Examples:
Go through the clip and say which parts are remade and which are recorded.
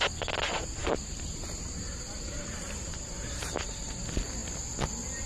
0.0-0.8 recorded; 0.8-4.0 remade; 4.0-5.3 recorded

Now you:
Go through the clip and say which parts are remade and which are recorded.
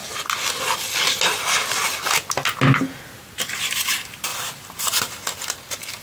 0.0-6.0 recorded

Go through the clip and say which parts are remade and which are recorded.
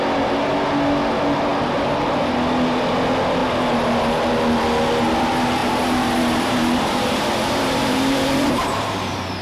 0.0-5.6 recorded; 5.6-9.4 remade